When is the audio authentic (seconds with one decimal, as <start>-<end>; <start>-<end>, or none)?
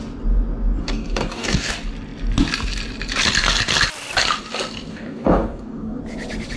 0.0-0.8; 1.7-4.9; 6.0-6.6